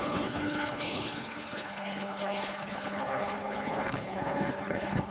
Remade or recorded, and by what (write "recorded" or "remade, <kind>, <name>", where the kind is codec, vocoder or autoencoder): remade, codec, HILCodec